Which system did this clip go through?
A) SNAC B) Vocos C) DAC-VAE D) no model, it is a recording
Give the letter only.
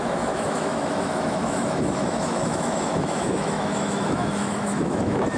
C